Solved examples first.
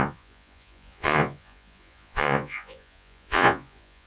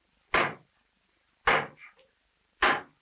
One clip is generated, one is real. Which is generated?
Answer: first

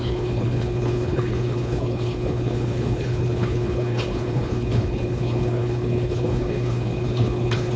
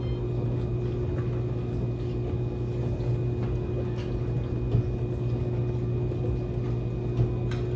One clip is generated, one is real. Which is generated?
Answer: first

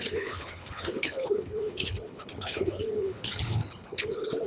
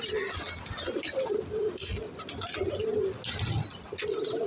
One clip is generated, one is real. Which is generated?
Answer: first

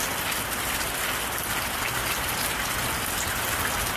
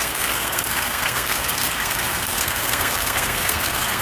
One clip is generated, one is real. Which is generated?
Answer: second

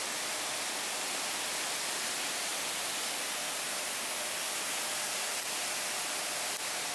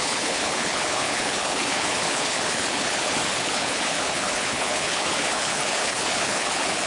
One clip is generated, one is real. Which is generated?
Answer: second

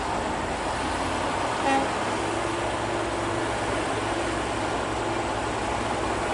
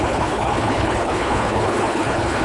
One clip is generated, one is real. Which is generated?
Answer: second